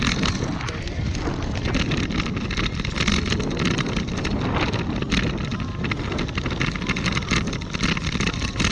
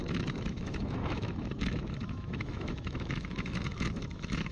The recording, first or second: first